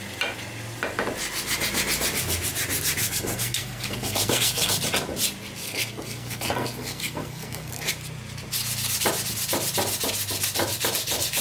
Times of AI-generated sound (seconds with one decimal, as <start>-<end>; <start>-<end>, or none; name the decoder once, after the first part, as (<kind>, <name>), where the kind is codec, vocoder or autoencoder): 3.0-4.8 (codec, SNAC); 5.6-7.9